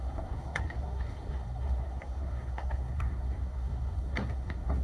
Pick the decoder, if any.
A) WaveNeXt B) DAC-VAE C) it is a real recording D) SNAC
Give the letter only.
D